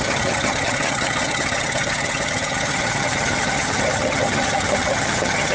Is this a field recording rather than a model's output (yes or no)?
no